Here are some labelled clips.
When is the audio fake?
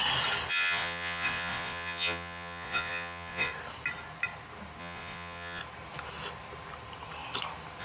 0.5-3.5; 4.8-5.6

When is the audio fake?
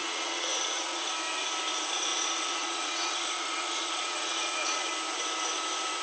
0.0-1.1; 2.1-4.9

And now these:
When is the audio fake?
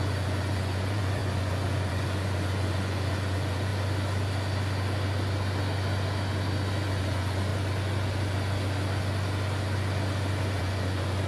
0.0-3.7; 7.0-7.5; 10.6-11.3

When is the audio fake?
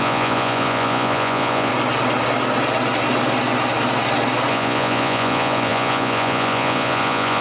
0.0-1.7; 4.5-7.4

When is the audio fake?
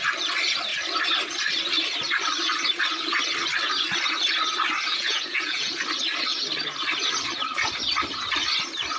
4.9-5.7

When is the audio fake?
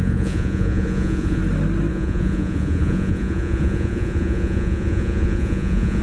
0.0-1.4; 1.9-6.0